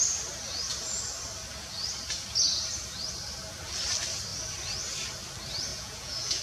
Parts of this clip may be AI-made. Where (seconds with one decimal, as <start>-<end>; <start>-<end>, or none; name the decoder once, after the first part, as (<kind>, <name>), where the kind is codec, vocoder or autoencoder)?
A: 5.7-6.4 (vocoder, Vocos)